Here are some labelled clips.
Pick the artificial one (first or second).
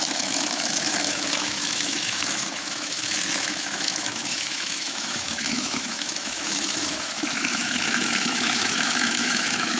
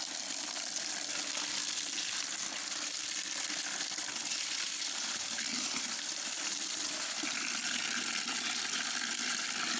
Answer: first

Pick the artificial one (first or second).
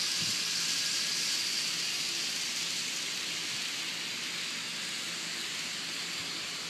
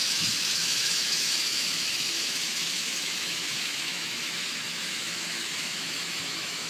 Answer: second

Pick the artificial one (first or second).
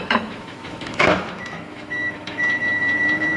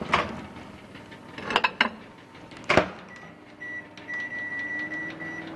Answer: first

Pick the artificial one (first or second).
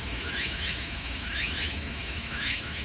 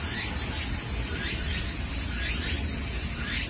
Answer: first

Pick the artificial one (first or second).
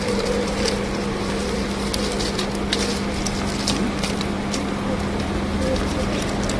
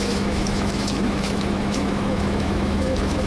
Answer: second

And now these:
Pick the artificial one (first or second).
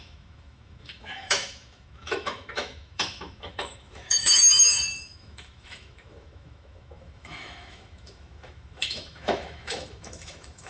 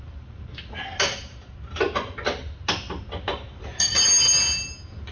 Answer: first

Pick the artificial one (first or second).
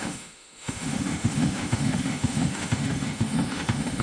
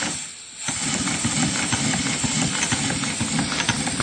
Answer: first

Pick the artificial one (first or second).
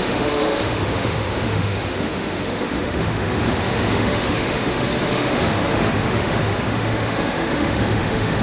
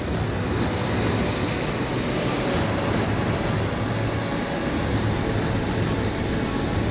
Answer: first